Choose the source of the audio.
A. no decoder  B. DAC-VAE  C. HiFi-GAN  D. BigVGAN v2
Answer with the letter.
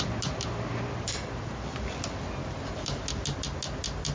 A